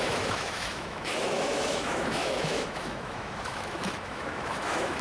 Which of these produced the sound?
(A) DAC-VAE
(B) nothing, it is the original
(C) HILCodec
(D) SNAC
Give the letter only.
A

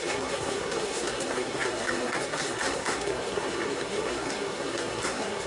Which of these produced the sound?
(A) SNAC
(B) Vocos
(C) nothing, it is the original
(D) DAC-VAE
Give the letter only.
A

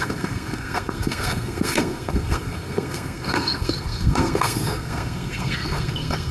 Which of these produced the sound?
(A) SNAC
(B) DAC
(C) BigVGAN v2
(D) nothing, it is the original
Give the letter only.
A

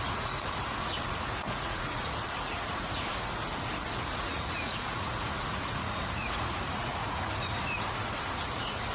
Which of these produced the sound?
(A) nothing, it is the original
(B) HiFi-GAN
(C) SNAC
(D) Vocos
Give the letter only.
D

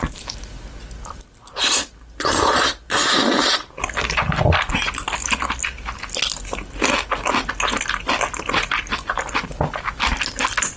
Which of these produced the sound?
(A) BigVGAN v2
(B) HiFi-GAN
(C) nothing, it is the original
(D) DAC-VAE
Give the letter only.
C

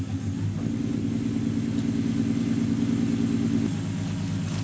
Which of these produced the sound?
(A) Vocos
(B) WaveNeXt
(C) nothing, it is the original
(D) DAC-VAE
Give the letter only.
C